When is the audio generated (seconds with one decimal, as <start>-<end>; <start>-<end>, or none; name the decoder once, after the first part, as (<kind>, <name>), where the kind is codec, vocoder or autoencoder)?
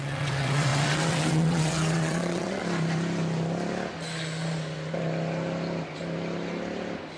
0.0-2.6 (vocoder, WaveNeXt)